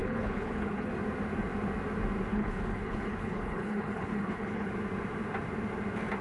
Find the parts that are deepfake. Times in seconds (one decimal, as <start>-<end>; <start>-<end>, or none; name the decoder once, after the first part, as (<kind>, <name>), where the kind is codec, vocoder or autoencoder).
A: 0.0-0.9 (codec, HILCodec); 2.3-4.7